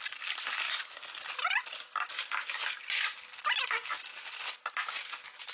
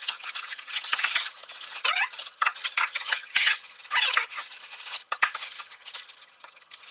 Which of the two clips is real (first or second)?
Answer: first